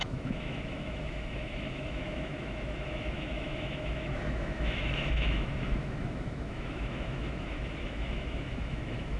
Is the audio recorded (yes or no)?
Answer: no